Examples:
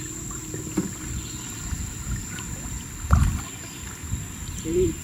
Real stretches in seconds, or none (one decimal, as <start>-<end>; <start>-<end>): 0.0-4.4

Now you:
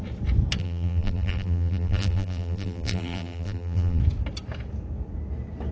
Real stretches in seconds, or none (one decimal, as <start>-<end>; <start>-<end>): 0.0-0.6; 4.0-5.7

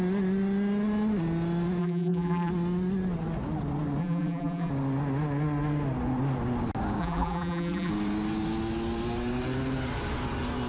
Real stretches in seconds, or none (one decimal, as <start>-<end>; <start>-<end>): 0.0-1.8; 2.5-4.0; 4.7-7.0; 7.9-10.7